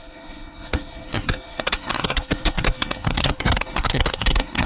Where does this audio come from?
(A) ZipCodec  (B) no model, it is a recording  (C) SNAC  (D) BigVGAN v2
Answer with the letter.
C